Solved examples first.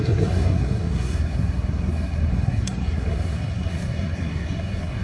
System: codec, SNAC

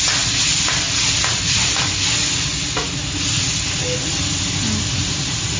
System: none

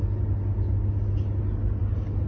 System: none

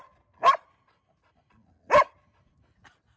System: none